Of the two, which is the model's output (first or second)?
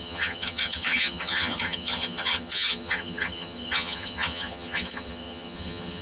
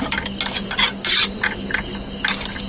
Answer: first